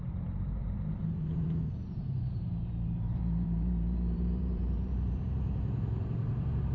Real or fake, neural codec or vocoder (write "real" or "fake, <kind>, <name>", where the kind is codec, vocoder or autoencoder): fake, vocoder, BigVGAN v2